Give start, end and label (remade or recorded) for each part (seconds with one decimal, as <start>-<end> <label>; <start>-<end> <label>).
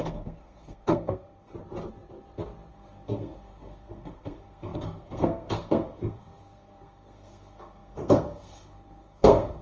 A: 0.0-1.5 remade; 1.5-2.7 recorded; 2.7-9.6 remade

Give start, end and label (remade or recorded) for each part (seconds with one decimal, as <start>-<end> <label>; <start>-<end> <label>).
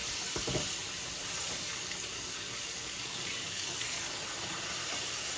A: 0.0-1.7 recorded; 1.7-4.2 remade; 4.2-5.4 recorded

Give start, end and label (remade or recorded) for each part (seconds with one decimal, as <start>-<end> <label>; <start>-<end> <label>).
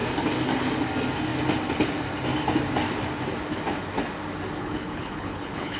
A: 0.0-4.6 recorded; 4.6-5.8 remade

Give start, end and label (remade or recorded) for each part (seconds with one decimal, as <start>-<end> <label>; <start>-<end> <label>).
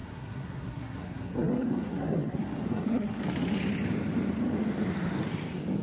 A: 0.0-3.2 remade; 3.2-5.8 recorded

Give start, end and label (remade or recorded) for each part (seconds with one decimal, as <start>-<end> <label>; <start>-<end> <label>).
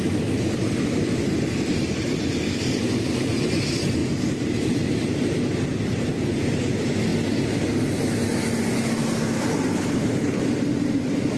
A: 0.0-9.7 recorded; 9.7-10.4 remade; 10.4-11.4 recorded